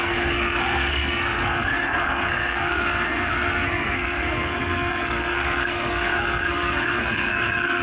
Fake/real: fake